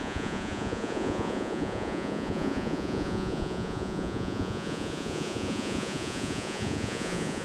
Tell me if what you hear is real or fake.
fake